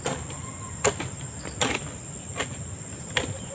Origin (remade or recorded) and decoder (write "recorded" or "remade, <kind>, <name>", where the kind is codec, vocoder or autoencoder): recorded